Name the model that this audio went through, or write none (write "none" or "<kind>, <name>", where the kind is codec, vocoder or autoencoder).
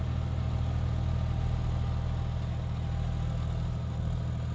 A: none